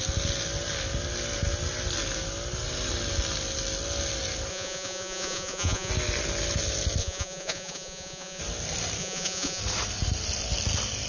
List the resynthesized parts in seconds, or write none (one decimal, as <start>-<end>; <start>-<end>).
4.5-5.9; 7.0-8.4; 9.0-9.6